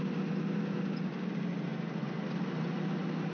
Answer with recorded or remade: recorded